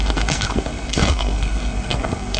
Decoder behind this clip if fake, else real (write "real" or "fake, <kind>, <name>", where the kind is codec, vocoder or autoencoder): fake, codec, SNAC